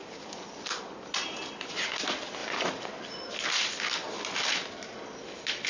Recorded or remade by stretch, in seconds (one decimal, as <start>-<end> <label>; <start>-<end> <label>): 0.0-5.7 recorded